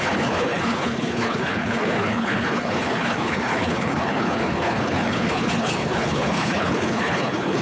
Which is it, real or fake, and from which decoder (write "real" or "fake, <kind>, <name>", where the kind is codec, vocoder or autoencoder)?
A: fake, codec, HILCodec